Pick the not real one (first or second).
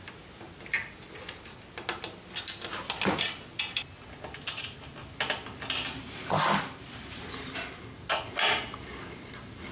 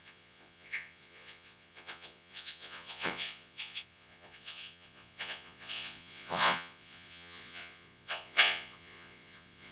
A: second